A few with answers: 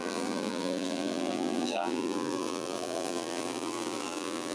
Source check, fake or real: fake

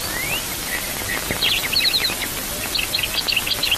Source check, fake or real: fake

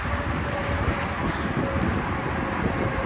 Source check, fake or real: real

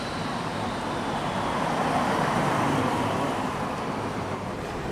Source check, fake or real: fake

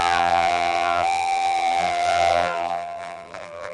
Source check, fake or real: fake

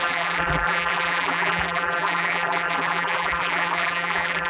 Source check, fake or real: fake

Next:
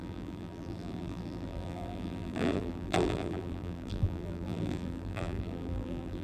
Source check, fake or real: fake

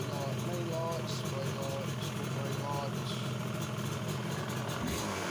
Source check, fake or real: real